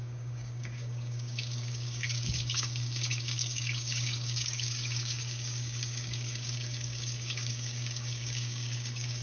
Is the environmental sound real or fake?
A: fake